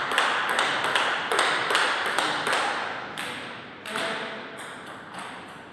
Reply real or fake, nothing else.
real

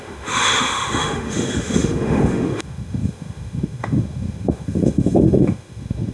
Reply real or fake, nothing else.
fake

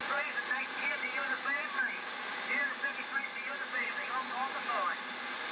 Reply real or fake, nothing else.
real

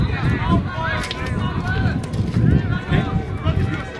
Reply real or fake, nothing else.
real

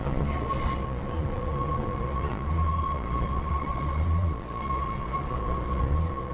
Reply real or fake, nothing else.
fake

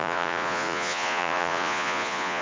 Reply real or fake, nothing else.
fake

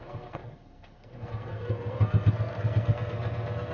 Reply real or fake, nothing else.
fake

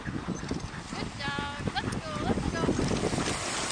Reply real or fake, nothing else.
real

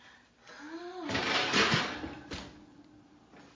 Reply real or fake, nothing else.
real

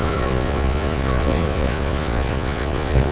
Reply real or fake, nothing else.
fake